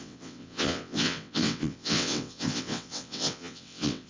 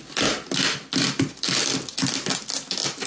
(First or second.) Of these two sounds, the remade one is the first